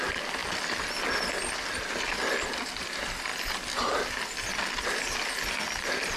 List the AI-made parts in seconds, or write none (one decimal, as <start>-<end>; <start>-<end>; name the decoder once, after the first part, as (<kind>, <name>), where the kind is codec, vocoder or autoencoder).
none